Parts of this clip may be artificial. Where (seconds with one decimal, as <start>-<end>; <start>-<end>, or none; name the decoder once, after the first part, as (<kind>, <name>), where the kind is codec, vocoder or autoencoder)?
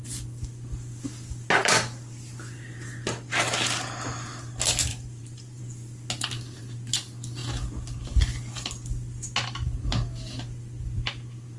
4.9-5.6 (vocoder, BigVGAN v2)